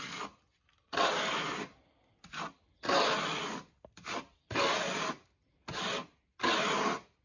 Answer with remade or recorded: recorded